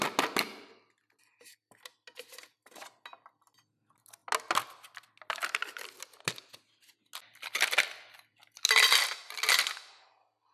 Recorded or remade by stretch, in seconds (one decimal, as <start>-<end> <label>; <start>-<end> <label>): 0.0-10.5 recorded